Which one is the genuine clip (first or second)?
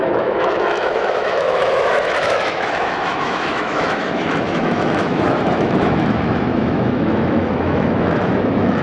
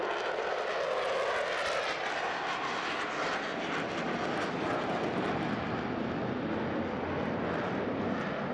second